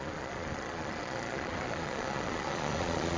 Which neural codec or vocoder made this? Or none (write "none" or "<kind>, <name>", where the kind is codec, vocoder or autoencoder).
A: vocoder, Vocos